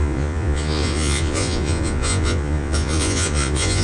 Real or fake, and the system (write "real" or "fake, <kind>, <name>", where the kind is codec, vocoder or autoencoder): fake, vocoder, Vocos